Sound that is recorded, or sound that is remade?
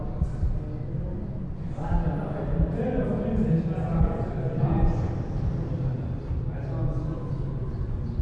recorded